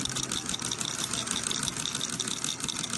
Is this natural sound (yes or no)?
yes